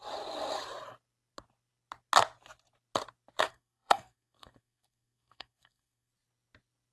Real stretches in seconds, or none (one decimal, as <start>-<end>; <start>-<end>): 0.0-3.5; 6.1-6.9